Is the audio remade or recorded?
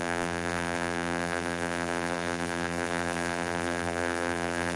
remade